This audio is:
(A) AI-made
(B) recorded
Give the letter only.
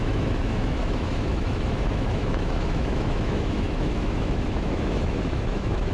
A